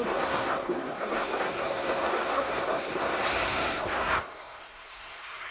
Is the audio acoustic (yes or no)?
no